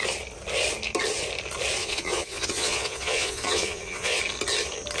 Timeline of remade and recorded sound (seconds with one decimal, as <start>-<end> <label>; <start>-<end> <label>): 0.0-1.8 recorded; 1.8-4.2 remade; 4.2-5.0 recorded